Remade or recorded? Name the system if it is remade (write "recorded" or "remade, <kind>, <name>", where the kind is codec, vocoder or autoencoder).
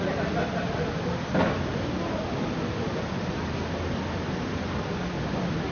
recorded